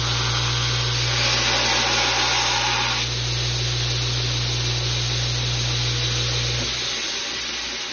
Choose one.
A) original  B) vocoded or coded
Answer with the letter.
A